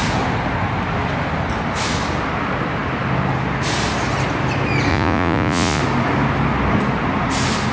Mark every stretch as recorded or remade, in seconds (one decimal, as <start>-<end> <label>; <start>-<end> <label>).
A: 0.0-4.9 recorded; 4.9-5.8 remade; 5.8-7.7 recorded